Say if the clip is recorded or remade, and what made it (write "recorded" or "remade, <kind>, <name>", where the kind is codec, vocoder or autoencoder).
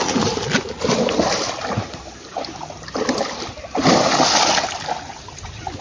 recorded